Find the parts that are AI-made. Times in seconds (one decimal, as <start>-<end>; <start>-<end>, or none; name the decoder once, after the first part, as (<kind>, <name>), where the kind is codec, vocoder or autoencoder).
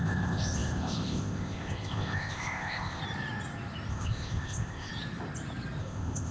0.0-3.0 (codec, ZipCodec); 3.9-4.9; 5.8-6.3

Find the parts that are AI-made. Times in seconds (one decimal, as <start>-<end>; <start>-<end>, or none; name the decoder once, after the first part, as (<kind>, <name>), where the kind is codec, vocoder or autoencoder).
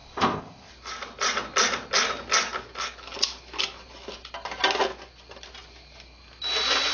0.0-0.7 (codec, ZipCodec)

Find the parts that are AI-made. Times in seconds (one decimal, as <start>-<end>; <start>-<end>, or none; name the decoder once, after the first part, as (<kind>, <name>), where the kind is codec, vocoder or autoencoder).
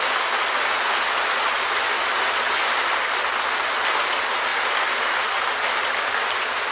none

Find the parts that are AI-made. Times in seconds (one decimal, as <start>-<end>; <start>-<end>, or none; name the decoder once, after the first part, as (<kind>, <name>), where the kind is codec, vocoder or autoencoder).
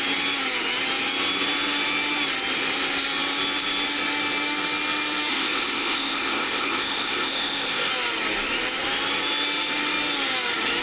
5.3-7.9 (codec, ZipCodec)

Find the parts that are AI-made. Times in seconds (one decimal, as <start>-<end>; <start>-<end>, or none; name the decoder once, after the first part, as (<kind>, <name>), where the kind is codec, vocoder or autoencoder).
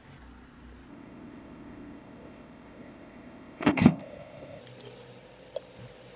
0.9-4.6 (codec, ZipCodec)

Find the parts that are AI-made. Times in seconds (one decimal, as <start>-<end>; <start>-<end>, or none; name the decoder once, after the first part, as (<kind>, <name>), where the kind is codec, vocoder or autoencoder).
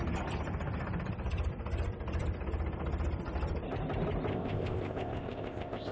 4.3-5.9 (codec, ZipCodec)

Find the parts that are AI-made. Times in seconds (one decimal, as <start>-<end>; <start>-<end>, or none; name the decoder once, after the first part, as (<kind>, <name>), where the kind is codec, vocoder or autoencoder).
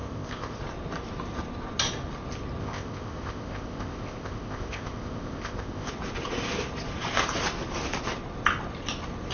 0.0-0.6 (codec, ZipCodec); 2.6-5.9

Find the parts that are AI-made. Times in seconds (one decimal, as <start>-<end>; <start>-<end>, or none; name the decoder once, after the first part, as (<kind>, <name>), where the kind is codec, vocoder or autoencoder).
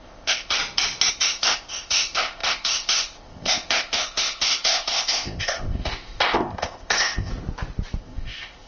0.0-0.6 (codec, ZipCodec); 1.1-7.3; 8.0-8.7